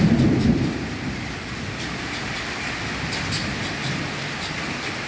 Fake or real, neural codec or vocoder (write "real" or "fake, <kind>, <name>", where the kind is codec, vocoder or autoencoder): real